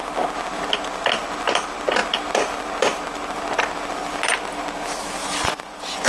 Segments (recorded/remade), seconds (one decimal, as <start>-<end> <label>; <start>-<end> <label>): 0.0-5.2 recorded; 5.2-6.1 remade